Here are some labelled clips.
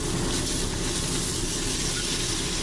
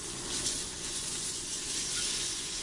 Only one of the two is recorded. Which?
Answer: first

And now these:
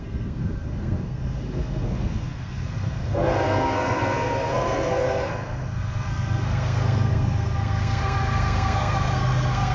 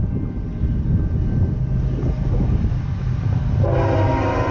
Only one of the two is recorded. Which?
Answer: second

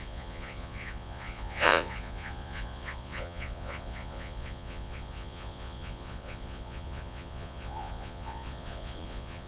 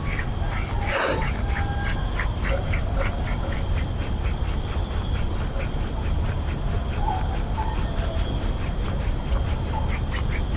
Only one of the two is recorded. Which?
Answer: second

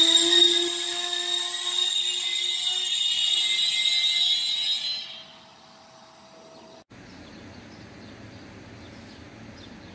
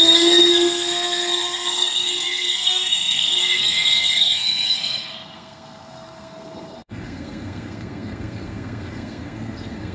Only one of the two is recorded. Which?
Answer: first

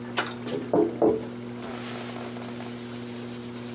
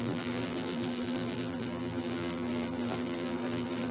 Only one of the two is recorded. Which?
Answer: first